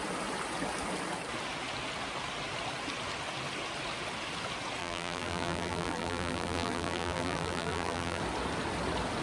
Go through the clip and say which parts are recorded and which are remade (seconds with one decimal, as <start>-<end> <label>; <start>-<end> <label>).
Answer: 0.0-4.8 recorded; 4.8-8.2 remade; 8.2-9.2 recorded